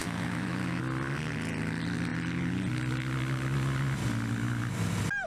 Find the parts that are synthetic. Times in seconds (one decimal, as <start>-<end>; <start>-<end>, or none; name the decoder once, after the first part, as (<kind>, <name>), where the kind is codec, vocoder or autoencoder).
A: 0.0-0.8 (autoencoder, DAC-VAE)